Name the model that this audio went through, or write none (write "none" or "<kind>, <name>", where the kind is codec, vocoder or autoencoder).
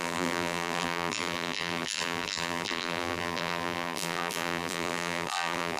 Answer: vocoder, BigVGAN v2